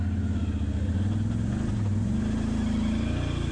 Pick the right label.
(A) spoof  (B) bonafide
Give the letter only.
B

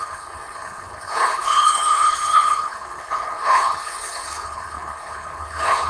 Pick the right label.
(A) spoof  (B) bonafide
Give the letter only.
A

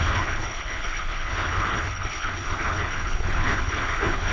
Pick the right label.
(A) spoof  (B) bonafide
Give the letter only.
A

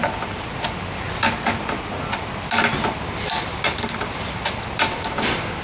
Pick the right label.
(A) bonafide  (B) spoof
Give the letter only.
A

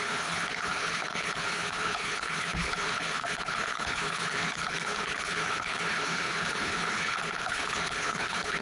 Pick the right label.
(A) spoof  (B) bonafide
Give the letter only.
A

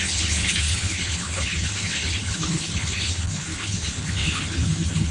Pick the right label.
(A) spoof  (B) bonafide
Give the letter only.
A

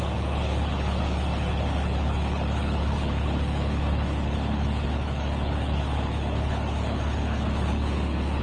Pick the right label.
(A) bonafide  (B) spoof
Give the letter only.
B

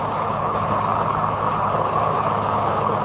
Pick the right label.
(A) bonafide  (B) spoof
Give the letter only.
B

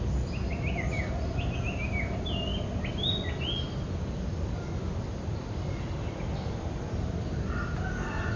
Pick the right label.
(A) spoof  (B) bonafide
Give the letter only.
B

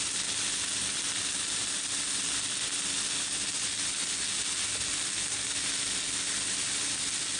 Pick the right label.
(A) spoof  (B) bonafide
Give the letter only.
B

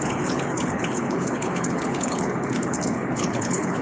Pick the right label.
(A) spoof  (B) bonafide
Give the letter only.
A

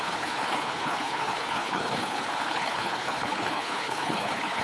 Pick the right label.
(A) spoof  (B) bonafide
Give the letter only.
A